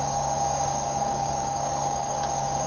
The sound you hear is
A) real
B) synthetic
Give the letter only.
B